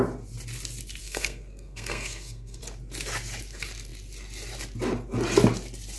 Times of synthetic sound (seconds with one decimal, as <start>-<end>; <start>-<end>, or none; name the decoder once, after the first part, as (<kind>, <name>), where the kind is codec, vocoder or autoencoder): 1.0-2.6 (codec, SNAC)